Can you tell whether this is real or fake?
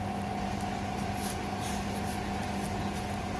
real